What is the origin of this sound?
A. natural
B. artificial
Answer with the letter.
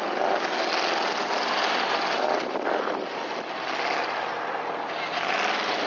A